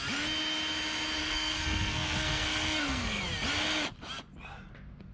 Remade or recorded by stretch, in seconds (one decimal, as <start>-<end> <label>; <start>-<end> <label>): 0.0-1.2 recorded; 1.2-3.2 remade; 3.2-5.1 recorded